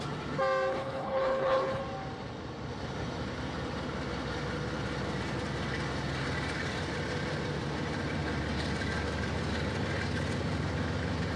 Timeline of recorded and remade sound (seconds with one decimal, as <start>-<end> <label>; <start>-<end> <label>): 0.0-0.7 recorded; 0.7-1.8 remade; 1.8-11.4 recorded